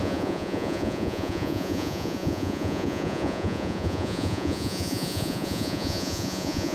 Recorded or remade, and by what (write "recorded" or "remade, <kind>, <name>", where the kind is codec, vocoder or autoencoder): remade, vocoder, Vocos